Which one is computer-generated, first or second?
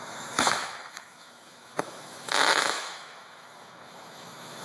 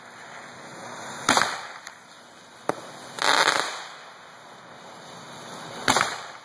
first